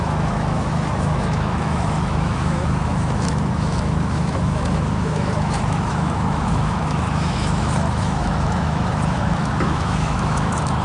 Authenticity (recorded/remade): remade